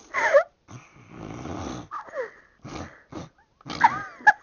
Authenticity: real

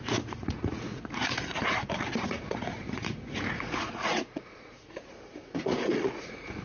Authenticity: fake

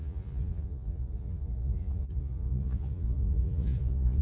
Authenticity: fake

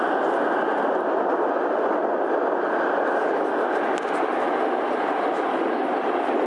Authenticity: real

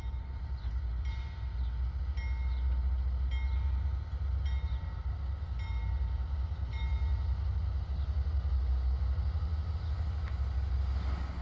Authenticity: real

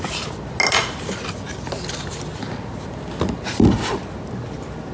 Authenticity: real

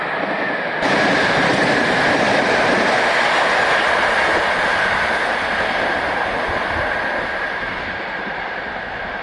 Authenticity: real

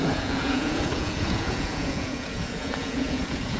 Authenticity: fake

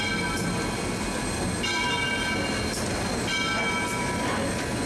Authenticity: real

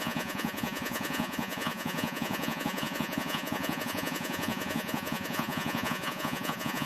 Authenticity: fake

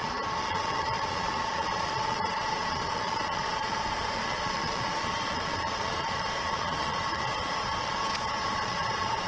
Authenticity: fake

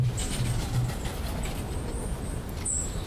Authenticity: real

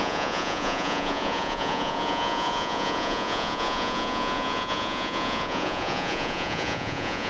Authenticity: fake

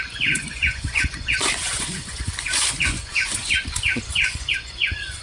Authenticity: fake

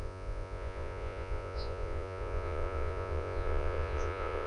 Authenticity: fake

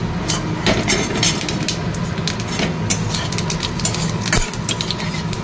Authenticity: real